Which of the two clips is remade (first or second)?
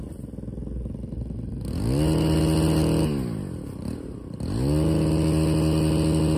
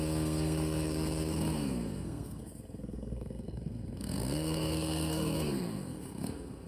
second